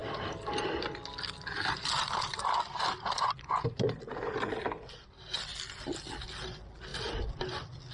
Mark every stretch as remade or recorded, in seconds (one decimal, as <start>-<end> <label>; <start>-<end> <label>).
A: 0.0-7.9 recorded